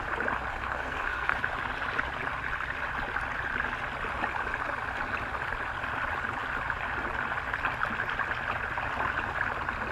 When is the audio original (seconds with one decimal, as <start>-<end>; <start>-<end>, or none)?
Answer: 0.0-0.5; 1.4-9.9